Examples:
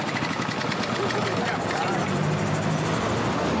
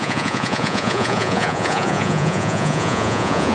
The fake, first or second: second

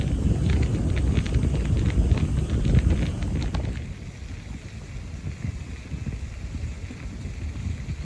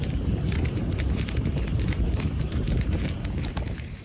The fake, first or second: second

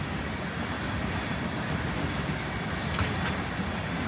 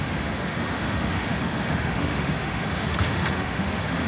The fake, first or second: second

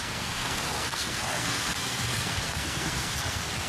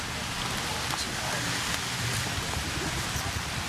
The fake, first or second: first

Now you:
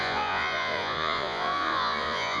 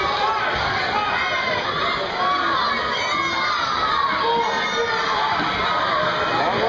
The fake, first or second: first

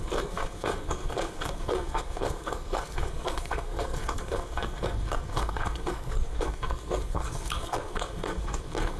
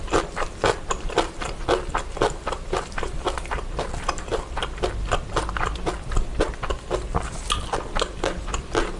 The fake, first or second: first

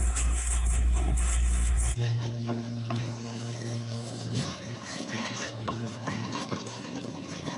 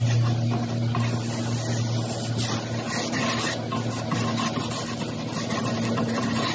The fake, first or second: first